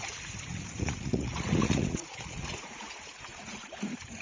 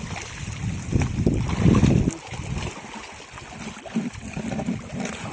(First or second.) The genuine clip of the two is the second